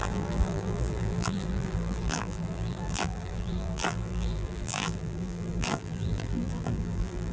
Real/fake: fake